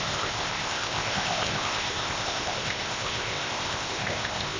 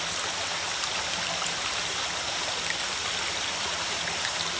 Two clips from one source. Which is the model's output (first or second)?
first